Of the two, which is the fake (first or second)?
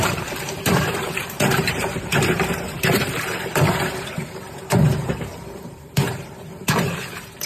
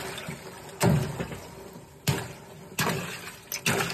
first